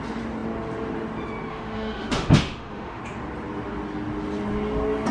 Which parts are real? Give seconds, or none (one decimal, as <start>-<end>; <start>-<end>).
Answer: 0.0-1.5; 3.0-5.1